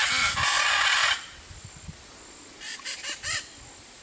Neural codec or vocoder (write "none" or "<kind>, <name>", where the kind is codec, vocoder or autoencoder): none